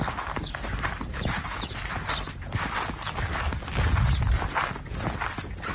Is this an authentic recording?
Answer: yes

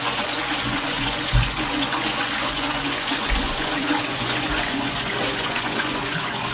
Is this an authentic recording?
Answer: no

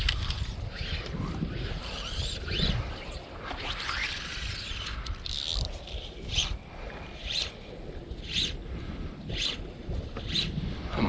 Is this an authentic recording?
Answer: yes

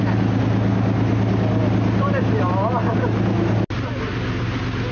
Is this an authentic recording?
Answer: yes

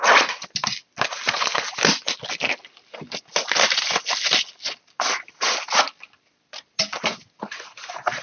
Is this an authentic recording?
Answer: yes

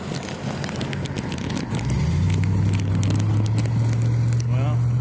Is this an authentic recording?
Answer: yes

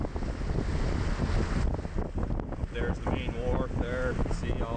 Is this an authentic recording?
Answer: yes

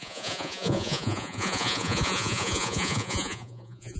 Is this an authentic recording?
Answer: no